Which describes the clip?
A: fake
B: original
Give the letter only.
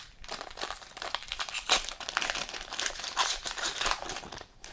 A